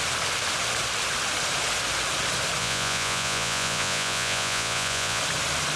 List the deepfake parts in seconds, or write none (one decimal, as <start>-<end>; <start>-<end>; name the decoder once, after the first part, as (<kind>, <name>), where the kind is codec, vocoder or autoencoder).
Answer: 2.6-5.2 (vocoder, Vocos)